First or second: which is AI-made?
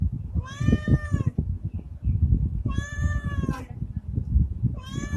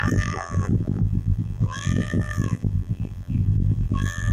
second